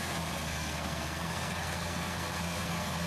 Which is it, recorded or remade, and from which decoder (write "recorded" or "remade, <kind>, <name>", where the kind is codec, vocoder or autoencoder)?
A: remade, codec, SNAC